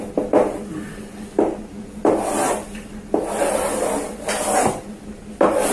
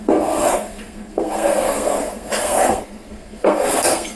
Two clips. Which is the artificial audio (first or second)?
second